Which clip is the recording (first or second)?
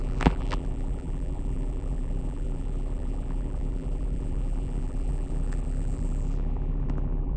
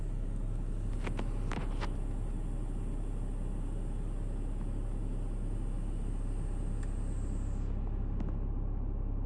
second